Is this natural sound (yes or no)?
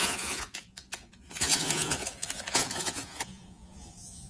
no